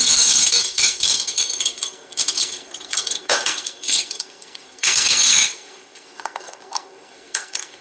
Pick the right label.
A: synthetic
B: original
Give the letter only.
A